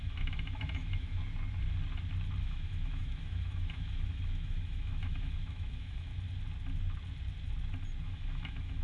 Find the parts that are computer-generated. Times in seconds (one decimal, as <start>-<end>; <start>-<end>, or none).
0.0-1.2; 2.4-6.1; 8.0-8.8